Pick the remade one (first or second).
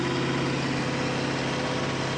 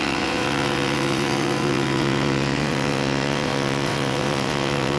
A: second